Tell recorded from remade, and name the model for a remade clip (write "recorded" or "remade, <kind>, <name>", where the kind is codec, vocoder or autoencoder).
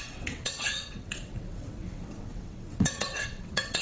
remade, vocoder, WaveNeXt